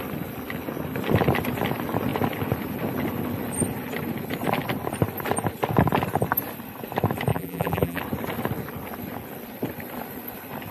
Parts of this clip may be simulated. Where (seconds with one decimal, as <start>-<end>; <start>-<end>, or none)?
7.3-8.0